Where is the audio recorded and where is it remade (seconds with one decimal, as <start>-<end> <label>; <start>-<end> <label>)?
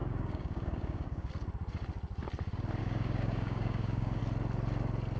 0.0-1.3 remade; 1.3-2.8 recorded; 2.8-4.2 remade; 4.2-5.2 recorded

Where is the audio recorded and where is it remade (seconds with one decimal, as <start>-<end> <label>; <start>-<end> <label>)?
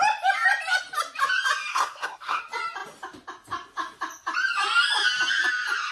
0.0-1.7 recorded; 1.7-2.4 remade; 2.4-5.9 recorded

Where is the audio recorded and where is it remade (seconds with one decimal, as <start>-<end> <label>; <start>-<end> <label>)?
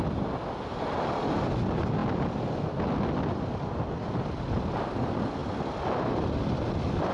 0.0-7.1 recorded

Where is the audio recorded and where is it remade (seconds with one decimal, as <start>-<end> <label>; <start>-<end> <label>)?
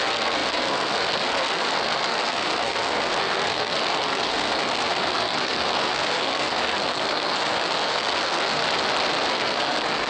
0.0-8.6 remade; 8.6-9.3 recorded; 9.3-10.1 remade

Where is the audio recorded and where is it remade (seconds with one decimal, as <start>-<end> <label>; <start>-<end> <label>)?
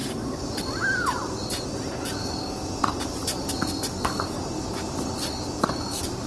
0.0-6.3 recorded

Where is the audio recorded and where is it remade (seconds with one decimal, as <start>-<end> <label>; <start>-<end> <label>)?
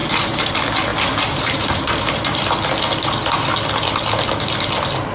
0.0-0.5 remade; 0.5-0.9 recorded; 0.9-2.5 remade; 2.5-5.1 recorded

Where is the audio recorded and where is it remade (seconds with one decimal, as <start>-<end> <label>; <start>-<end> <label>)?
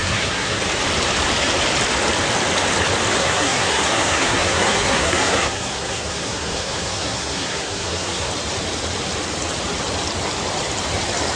0.0-0.6 remade; 0.6-3.2 recorded; 3.2-8.3 remade; 8.3-11.4 recorded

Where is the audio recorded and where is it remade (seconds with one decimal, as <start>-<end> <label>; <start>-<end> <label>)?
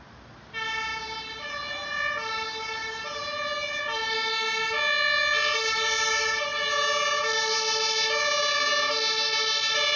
0.0-0.9 recorded; 0.9-1.5 remade; 1.5-10.0 recorded